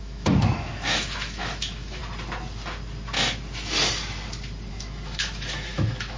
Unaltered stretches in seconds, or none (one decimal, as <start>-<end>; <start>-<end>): 2.0-4.7